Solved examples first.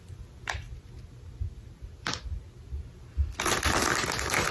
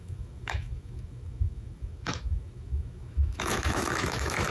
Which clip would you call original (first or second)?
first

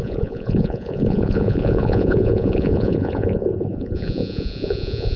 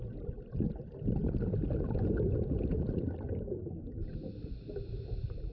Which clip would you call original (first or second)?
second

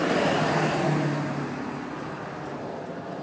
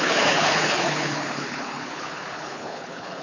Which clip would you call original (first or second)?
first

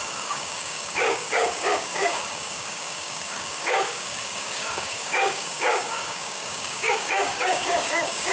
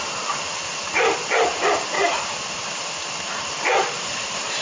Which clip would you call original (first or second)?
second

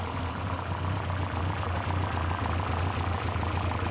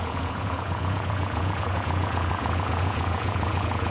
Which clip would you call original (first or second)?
first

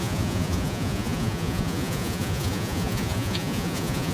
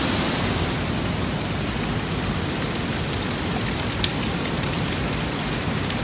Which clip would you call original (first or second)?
second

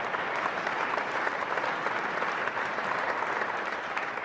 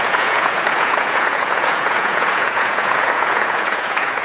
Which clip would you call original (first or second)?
first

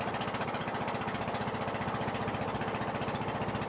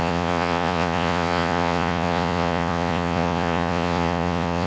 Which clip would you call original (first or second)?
first